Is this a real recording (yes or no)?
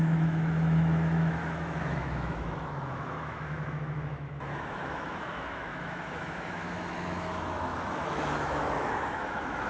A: no